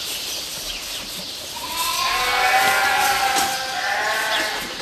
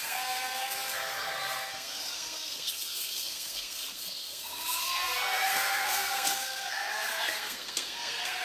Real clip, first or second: first